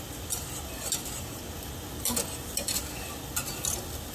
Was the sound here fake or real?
real